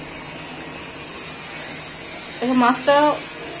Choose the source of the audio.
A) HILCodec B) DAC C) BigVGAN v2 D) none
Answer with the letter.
D